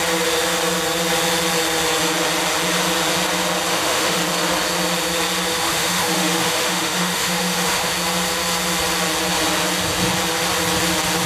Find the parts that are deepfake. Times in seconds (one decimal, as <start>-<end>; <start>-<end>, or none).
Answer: 3.7-4.2; 5.5-7.9